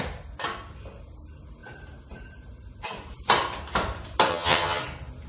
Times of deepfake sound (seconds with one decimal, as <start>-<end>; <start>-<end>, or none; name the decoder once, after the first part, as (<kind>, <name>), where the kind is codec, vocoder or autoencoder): 4.3-4.8 (vocoder, HiFi-GAN)